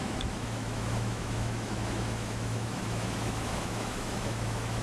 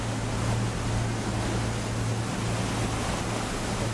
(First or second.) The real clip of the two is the second